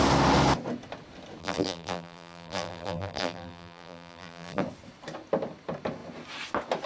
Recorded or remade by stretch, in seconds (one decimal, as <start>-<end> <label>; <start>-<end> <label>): 0.0-1.4 recorded; 1.4-4.6 remade; 4.6-6.9 recorded

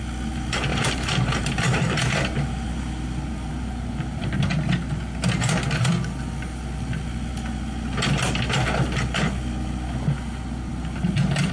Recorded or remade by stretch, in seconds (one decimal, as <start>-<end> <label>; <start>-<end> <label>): 0.0-0.7 recorded; 0.7-4.3 remade; 4.3-11.5 recorded

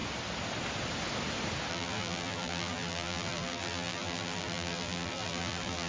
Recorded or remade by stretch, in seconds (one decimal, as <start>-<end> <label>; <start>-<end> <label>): 0.0-1.7 recorded; 1.7-5.9 remade

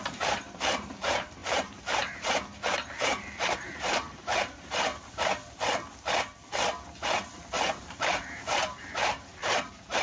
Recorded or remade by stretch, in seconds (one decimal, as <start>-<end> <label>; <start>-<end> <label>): 0.0-4.9 remade; 4.9-7.8 recorded; 7.8-10.0 remade

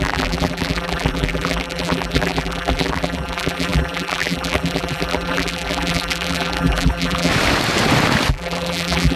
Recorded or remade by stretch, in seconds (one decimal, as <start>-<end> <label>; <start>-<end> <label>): 0.0-7.3 remade; 7.3-8.3 recorded; 8.3-9.2 remade

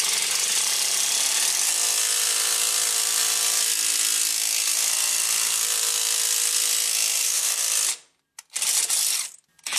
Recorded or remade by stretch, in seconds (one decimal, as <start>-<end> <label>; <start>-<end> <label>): 0.0-7.1 recorded; 7.1-7.6 remade; 7.6-9.8 recorded